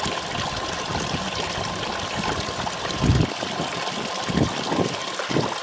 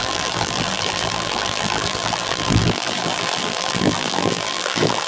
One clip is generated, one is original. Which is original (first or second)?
first